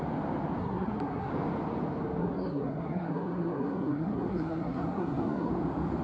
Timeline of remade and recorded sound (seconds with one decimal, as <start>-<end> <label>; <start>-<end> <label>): 0.0-0.6 recorded; 0.6-1.3 remade; 1.3-2.2 recorded; 2.2-5.5 remade; 5.5-6.0 recorded